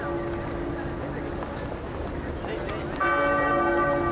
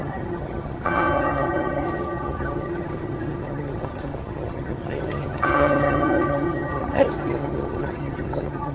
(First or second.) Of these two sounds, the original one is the first